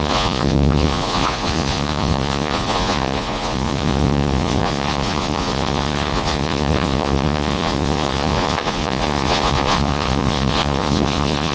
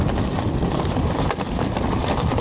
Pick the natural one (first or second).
second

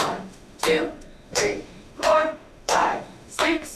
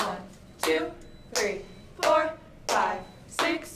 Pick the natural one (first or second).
second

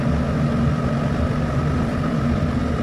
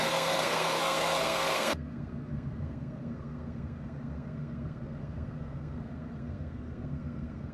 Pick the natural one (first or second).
first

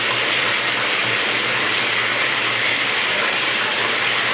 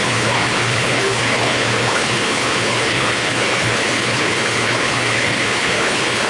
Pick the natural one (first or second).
first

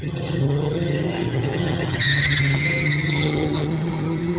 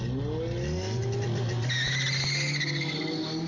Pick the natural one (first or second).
second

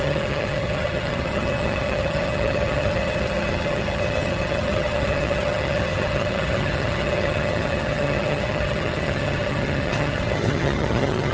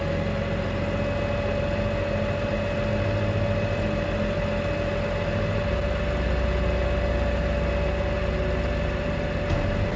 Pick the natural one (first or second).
second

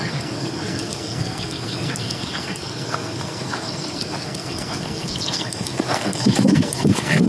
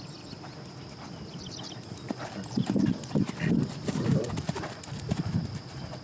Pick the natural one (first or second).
second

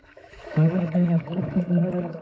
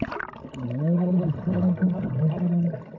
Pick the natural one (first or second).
second